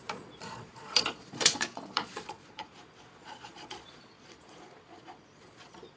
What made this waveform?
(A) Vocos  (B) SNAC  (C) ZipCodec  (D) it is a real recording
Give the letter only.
A